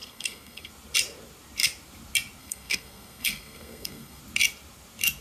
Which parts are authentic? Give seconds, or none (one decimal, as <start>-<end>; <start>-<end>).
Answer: 0.7-2.4; 4.2-5.2